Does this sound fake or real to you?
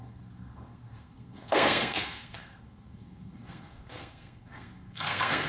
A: fake